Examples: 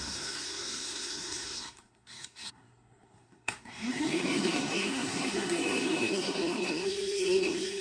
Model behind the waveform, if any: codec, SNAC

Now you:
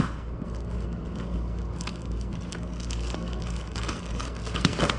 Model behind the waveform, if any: codec, SNAC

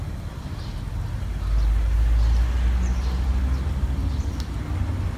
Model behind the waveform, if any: none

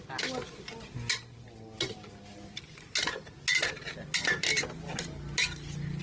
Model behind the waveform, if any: none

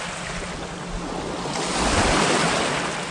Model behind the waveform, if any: none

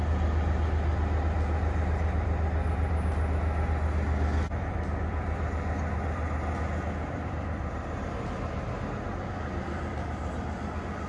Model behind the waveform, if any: none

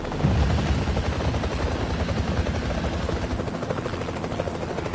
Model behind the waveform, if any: none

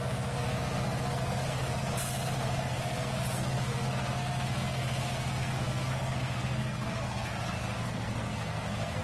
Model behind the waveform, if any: codec, SNAC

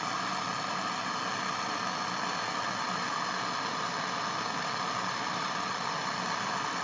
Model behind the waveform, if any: none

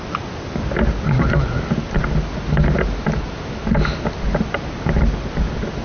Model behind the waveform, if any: none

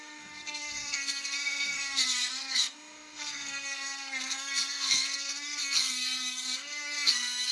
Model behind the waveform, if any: codec, SNAC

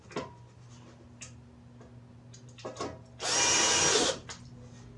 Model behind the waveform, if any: none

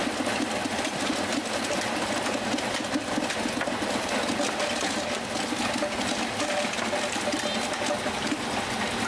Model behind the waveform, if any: none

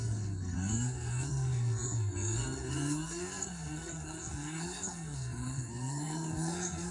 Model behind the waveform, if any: codec, SNAC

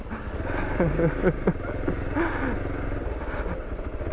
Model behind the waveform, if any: none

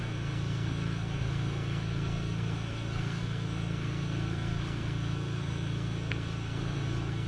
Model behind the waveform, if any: codec, SNAC